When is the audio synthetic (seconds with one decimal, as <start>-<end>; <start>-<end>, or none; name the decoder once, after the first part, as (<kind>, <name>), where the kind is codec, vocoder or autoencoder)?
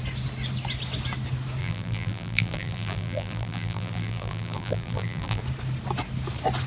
1.6-5.4 (vocoder, BigVGAN v2)